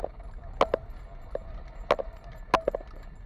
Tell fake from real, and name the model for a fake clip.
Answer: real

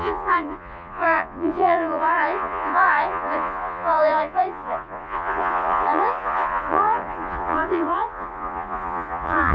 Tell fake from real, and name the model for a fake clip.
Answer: fake, vocoder, Vocos